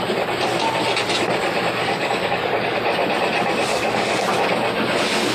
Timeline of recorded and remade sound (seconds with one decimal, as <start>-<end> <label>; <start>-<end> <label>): 0.0-1.8 recorded; 1.8-2.8 remade; 2.8-3.7 recorded; 3.7-4.3 remade; 4.3-5.3 recorded